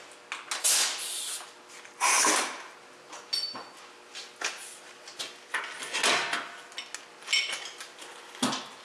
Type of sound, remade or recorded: recorded